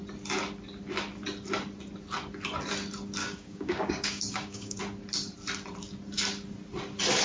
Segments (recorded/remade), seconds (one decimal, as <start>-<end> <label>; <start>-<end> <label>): 0.0-3.2 recorded; 3.2-4.8 remade; 4.8-7.2 recorded